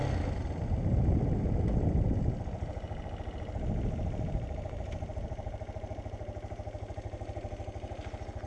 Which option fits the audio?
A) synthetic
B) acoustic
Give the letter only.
B